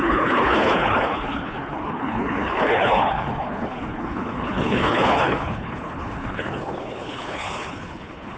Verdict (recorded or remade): remade